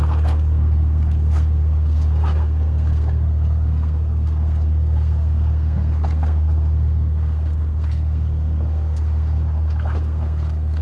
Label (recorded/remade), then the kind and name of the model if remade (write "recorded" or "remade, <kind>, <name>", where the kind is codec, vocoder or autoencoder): remade, codec, SNAC